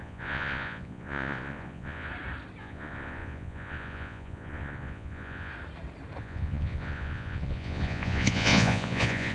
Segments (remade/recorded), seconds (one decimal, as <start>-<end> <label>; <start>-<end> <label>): 0.0-2.1 remade; 2.1-2.6 recorded; 2.6-5.5 remade; 5.5-6.2 recorded; 6.2-9.3 remade